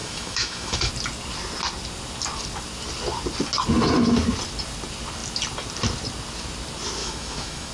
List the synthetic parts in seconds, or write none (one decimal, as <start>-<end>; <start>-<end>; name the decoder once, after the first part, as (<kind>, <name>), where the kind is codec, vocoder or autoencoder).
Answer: 0.0-0.9 (autoencoder, DAC-VAE); 7.0-7.7